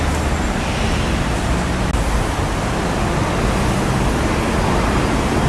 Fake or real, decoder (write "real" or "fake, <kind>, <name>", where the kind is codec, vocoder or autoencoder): real